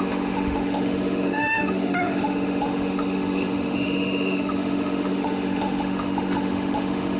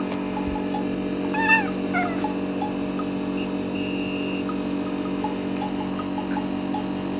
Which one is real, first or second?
second